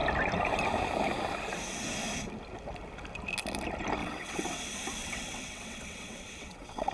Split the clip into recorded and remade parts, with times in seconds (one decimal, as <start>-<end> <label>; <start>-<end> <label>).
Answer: 0.0-4.0 recorded; 4.0-4.6 remade; 4.6-5.0 recorded; 5.0-6.9 remade